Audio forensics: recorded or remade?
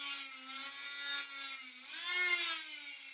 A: recorded